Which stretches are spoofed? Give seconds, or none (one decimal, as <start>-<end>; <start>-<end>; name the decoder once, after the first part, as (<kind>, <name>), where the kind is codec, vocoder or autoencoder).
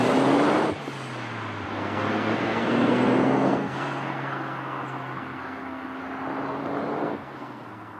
1.7-6.0 (codec, SNAC); 7.0-8.0